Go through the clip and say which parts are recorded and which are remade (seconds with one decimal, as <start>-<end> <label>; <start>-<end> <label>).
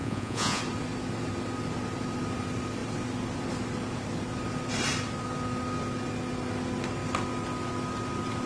0.0-0.6 remade; 0.6-8.5 recorded